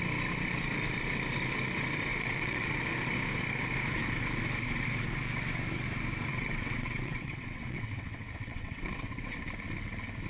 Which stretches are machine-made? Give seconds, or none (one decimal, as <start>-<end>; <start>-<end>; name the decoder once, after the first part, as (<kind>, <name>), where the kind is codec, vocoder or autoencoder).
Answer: 2.1-2.7 (vocoder, WaveNeXt); 6.3-9.4